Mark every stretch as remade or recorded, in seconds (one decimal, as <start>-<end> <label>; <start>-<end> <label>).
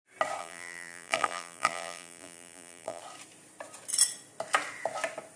0.0-0.4 recorded; 0.4-3.0 remade; 3.0-5.4 recorded